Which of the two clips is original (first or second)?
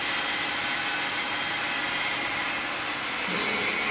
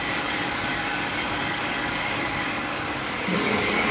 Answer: first